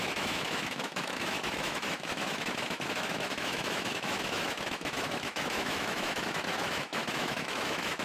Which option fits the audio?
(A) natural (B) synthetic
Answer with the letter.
B